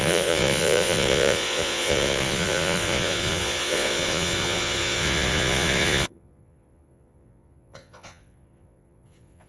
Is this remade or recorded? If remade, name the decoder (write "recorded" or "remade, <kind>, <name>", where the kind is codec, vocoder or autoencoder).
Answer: remade, vocoder, Vocos